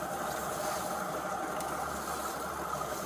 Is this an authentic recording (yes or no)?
yes